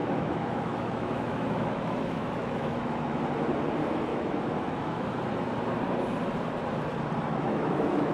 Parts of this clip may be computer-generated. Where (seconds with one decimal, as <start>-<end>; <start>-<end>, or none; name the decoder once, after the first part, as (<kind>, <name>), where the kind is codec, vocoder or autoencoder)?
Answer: 0.0-3.2 (autoencoder, DAC-VAE); 4.1-5.2; 7.3-8.1